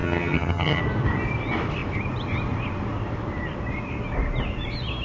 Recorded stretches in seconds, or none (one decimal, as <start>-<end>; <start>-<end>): 0.8-5.0